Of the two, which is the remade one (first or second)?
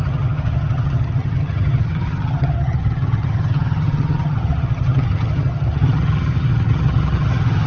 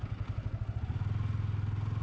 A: first